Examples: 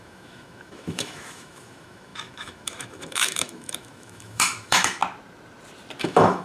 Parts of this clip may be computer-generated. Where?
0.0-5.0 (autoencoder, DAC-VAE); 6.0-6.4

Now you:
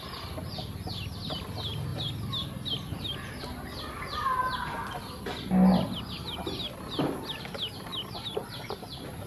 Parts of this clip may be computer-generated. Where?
none

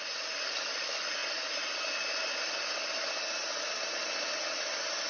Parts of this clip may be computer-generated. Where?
none

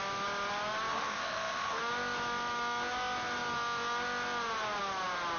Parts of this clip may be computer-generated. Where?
0.9-1.8 (autoencoder, DAC-VAE)

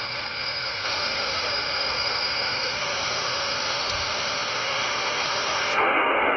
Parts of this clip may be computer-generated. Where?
0.0-6.4 (autoencoder, DAC-VAE)